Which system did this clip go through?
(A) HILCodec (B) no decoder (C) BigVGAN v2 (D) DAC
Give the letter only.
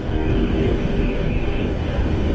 D